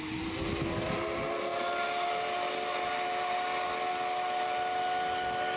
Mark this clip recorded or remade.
recorded